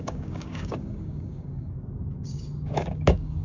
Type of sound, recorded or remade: remade